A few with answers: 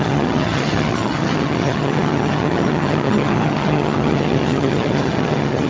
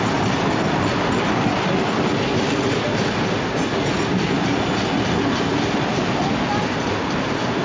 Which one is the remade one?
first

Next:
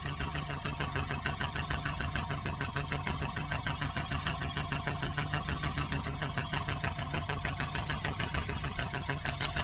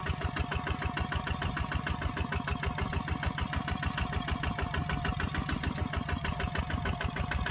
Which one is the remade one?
first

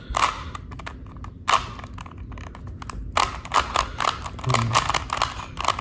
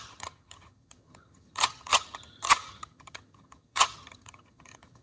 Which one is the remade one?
second